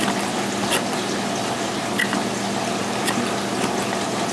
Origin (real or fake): real